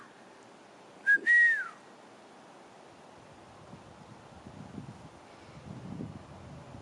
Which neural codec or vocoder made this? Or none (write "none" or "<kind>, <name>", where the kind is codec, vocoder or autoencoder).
none